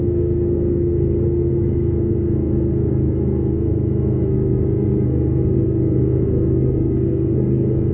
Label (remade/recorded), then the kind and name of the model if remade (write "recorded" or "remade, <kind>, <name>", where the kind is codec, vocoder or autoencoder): remade, codec, SNAC